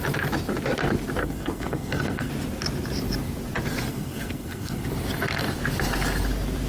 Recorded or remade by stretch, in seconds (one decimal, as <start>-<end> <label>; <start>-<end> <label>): 0.0-1.2 recorded; 1.2-2.3 remade; 2.3-3.9 recorded; 3.9-4.9 remade; 4.9-6.7 recorded